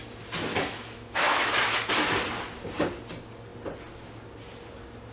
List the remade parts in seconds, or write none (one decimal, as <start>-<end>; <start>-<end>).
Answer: 0.5-1.8